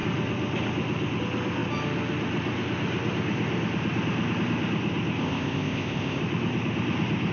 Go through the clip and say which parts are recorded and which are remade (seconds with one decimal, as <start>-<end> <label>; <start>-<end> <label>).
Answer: 0.0-5.2 recorded; 5.2-6.2 remade; 6.2-7.3 recorded